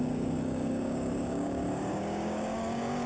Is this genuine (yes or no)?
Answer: no